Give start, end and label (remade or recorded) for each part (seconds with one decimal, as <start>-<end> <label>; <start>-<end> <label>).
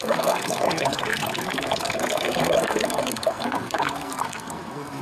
0.0-5.0 remade